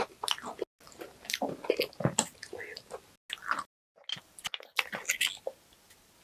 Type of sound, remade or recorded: recorded